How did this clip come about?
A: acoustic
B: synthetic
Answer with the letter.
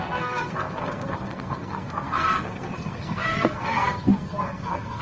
B